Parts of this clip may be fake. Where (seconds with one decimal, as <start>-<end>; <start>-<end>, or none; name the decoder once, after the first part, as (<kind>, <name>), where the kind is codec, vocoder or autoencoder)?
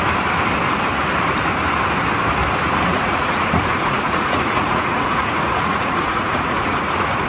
2.9-7.3 (vocoder, Vocos)